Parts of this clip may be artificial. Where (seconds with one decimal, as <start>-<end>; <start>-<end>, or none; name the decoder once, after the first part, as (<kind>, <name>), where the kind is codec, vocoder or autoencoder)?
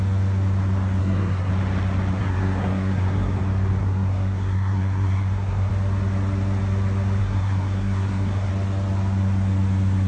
1.0-1.5 (codec, SNAC); 2.2-3.4; 3.8-5.7; 7.2-8.5